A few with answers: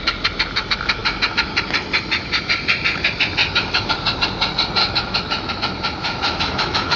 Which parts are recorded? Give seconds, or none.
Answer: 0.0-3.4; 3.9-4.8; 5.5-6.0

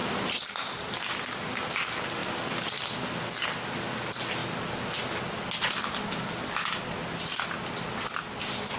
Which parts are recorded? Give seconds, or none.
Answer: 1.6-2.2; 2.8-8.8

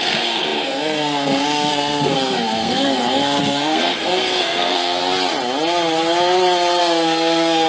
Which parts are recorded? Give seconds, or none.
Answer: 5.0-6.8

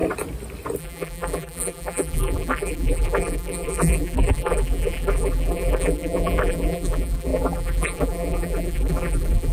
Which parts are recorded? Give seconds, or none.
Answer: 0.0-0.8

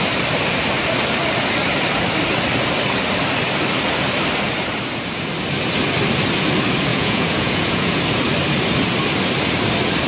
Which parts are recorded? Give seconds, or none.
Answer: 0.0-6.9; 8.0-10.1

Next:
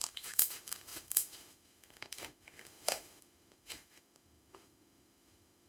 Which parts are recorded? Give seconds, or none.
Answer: none

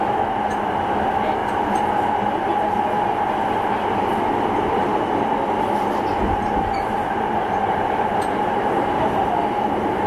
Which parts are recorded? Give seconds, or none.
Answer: 0.0-10.1